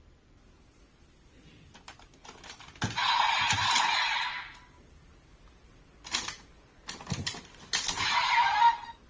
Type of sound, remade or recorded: recorded